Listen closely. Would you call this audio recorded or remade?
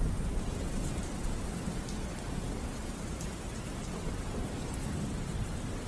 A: recorded